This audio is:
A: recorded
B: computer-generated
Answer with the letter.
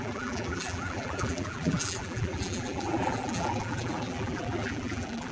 B